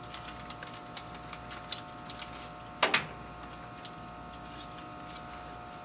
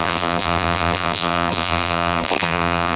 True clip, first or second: first